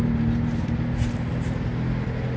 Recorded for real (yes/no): yes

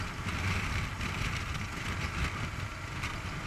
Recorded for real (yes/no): yes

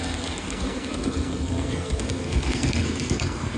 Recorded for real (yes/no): no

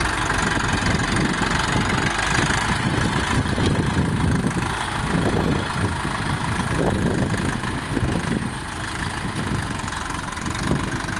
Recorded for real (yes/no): yes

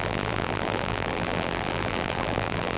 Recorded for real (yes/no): no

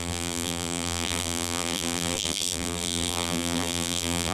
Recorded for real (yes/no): no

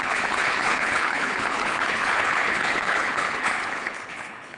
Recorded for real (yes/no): no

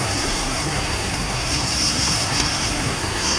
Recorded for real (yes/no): no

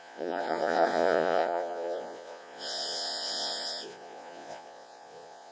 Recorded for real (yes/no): no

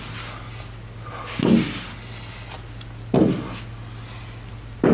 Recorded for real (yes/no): yes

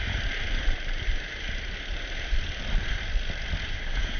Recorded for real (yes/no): yes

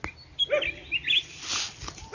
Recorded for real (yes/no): yes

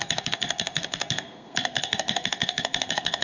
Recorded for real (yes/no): no